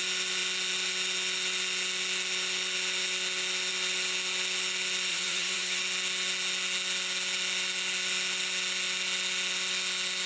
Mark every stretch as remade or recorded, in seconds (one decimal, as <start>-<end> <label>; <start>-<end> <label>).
0.0-5.1 recorded; 5.1-5.8 remade; 5.8-10.3 recorded

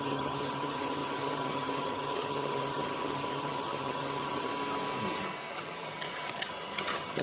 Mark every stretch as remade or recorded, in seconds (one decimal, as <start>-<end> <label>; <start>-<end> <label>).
0.0-4.5 remade; 4.5-5.5 recorded; 5.5-7.2 remade